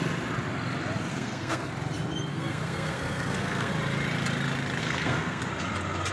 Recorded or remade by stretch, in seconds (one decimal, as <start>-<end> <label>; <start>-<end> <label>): 0.0-1.1 recorded; 1.1-1.7 remade; 1.7-2.3 recorded; 2.3-3.7 remade; 3.7-4.8 recorded; 4.8-5.5 remade; 5.5-6.1 recorded